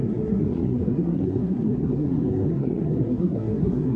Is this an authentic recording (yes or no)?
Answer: no